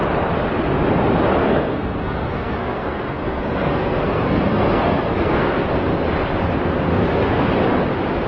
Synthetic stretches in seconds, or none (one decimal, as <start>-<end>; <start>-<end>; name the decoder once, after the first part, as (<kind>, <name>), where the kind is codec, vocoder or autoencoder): 1.4-5.7 (codec, SNAC); 6.9-7.5